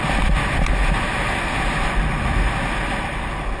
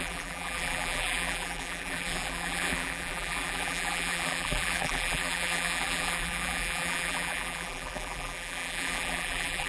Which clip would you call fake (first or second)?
second